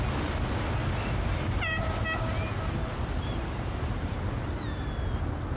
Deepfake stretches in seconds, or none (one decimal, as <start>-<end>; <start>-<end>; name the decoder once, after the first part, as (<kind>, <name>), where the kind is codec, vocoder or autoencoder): 0.8-1.8 (vocoder, BigVGAN v2); 2.8-4.1